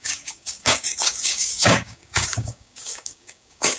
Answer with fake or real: fake